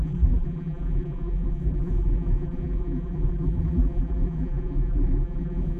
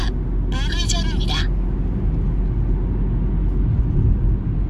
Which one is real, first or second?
second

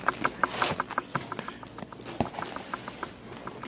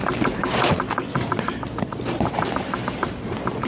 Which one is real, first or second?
first